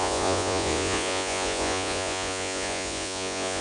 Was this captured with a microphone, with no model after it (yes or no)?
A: no